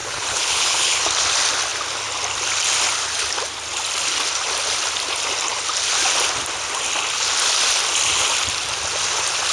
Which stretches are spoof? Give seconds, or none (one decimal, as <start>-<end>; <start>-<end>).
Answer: 0.0-1.0